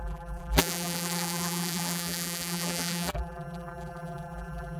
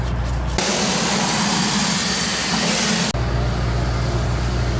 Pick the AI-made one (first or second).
first